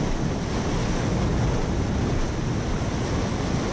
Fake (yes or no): no